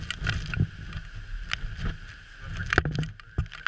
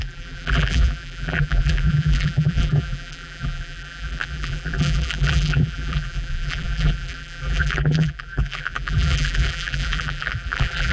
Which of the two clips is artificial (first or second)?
second